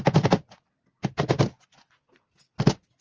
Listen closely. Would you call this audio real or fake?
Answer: real